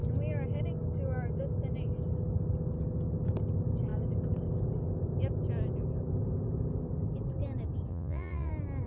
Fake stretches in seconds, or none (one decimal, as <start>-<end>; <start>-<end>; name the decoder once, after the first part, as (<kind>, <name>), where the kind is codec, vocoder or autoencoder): 7.9-8.5 (vocoder, Vocos)